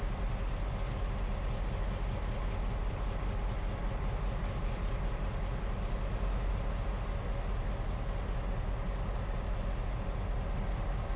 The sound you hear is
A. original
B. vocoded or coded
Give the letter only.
A